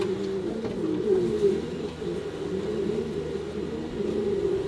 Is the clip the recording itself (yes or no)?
yes